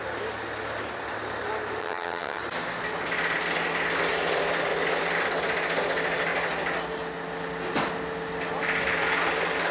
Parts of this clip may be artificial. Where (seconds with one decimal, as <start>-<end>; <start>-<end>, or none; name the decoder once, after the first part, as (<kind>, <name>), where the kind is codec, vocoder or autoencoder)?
1.8-2.4 (vocoder, HiFi-GAN)